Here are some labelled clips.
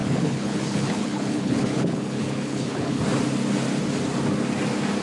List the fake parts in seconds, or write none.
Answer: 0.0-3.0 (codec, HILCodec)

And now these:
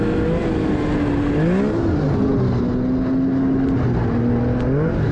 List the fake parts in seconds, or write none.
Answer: none

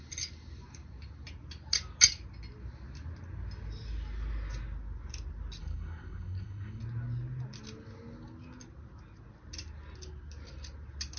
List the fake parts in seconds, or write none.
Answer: 5.6-6.8 (codec, HILCodec)

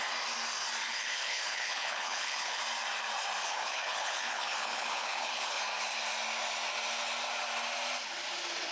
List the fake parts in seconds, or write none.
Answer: 0.8-2.6 (codec, HILCodec); 3.4-5.6

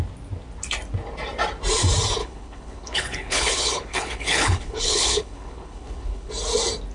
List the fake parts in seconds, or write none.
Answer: 2.2-6.3 (codec, HILCodec)

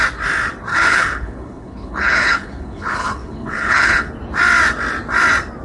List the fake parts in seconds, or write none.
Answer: 0.7-4.1 (codec, HILCodec)